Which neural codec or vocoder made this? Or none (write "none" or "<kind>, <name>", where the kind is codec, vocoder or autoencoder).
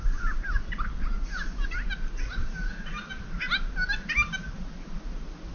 none